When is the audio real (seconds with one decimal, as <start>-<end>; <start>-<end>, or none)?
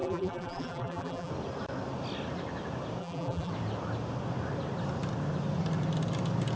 1.3-3.0; 3.5-6.6